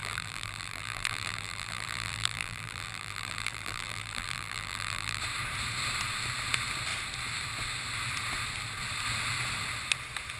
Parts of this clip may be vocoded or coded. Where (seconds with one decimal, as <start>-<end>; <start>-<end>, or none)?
0.0-5.2